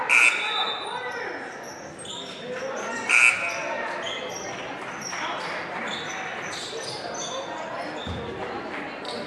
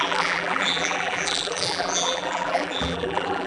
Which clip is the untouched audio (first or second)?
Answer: first